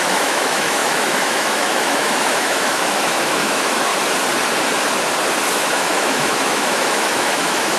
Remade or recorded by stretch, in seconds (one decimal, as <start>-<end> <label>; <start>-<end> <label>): 0.0-3.9 remade; 3.9-5.5 recorded; 5.5-7.8 remade